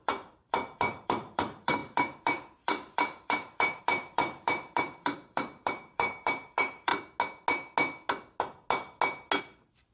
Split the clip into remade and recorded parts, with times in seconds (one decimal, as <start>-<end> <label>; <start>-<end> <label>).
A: 0.0-6.9 remade; 6.9-9.4 recorded; 9.4-9.9 remade